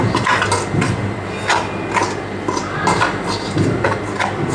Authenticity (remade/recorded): remade